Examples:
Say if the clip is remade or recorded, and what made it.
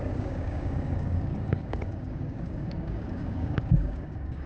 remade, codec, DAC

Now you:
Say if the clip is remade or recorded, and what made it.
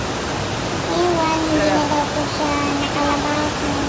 recorded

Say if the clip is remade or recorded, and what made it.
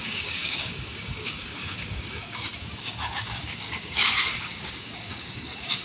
remade, codec, DAC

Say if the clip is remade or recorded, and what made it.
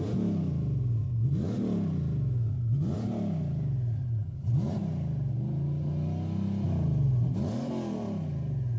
recorded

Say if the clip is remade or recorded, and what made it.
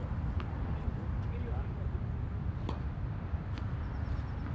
recorded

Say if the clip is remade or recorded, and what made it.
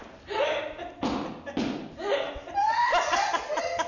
recorded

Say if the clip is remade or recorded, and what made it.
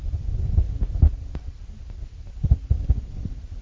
recorded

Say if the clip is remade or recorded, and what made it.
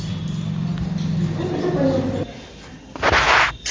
recorded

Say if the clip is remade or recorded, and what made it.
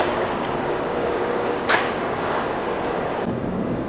remade, codec, DAC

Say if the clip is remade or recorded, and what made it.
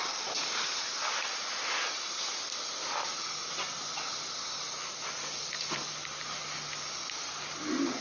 recorded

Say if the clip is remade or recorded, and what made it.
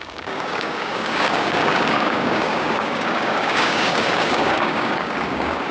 remade, codec, DAC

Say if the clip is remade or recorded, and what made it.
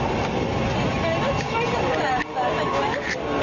recorded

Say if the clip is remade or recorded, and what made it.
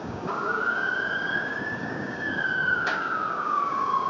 remade, codec, DAC